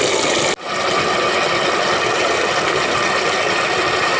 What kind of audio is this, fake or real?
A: real